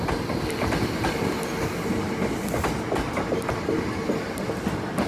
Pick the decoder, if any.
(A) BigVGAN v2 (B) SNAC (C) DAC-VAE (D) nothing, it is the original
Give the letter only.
D